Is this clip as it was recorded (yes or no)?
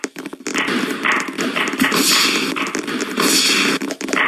yes